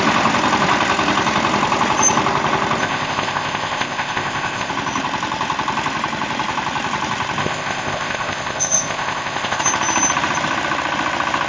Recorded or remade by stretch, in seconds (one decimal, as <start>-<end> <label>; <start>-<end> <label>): 0.0-2.8 recorded; 2.8-4.7 remade; 4.7-7.4 recorded; 7.4-9.6 remade; 9.6-11.5 recorded